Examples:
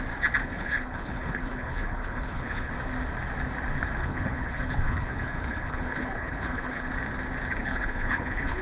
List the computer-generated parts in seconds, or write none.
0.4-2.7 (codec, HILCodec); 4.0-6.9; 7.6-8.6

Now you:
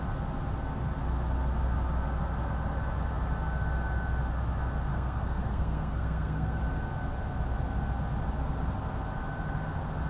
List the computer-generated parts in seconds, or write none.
4.9-6.6 (codec, SNAC)

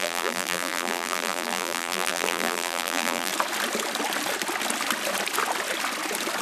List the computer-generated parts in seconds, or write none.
0.0-3.3 (vocoder, BigVGAN v2)

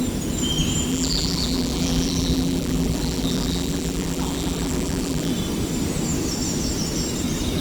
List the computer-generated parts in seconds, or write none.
0.9-5.3 (vocoder, BigVGAN v2)

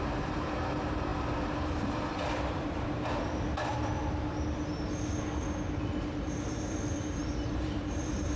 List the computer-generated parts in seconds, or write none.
0.0-3.7 (vocoder, BigVGAN v2); 6.2-8.4

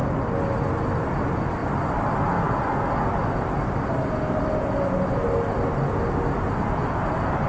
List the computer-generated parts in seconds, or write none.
none

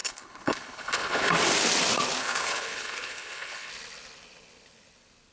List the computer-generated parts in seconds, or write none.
0.0-1.3 (codec, HILCodec); 2.2-3.7

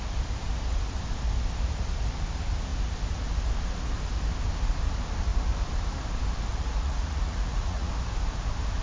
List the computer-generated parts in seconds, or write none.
6.5-7.9 (vocoder, Vocos)